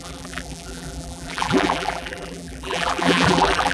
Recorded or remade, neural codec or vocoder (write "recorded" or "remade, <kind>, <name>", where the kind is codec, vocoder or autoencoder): remade, vocoder, BigVGAN v2